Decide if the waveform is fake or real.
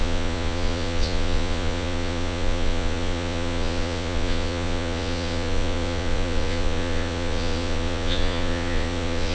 fake